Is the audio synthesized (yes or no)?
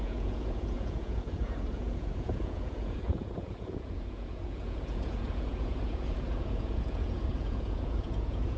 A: yes